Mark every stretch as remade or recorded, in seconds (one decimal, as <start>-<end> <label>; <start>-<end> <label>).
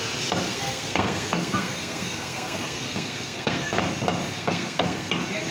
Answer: 0.0-0.5 recorded; 0.5-3.8 remade; 3.8-4.4 recorded; 4.4-5.1 remade; 5.1-5.5 recorded